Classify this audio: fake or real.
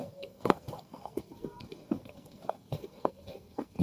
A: fake